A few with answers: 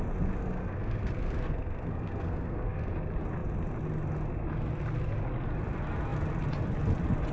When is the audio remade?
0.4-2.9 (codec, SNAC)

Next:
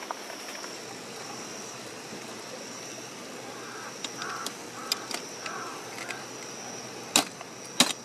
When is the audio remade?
0.0-2.7 (vocoder, BigVGAN v2)

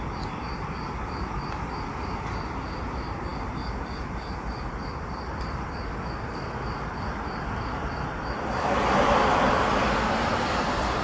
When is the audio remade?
none

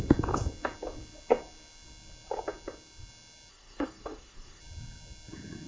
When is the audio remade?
3.5-4.6 (codec, SNAC)

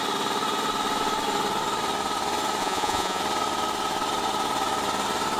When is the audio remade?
2.6-3.2 (vocoder, Vocos)

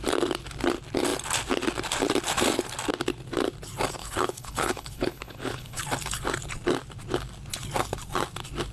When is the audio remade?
4.0-5.8 (codec, HILCodec)

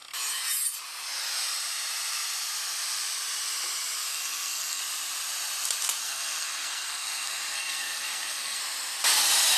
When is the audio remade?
4.1-4.8 (codec, SNAC); 6.0-8.6

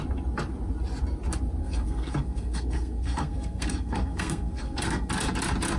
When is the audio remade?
1.6-5.1 (codec, SNAC)